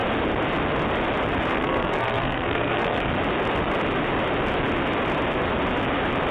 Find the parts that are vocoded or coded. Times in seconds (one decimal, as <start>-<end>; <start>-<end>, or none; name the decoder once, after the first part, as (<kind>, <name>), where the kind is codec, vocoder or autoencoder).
1.5-3.1 (codec, SNAC)